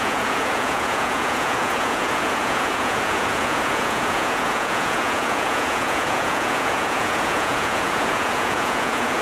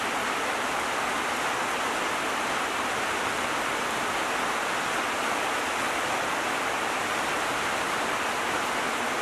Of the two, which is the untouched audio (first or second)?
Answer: second